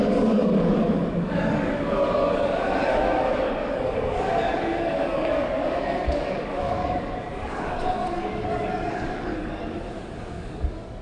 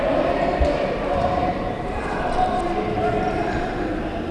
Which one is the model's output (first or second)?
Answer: first